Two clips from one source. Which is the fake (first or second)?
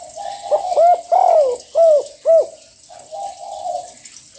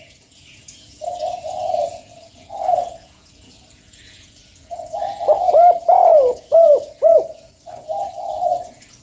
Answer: second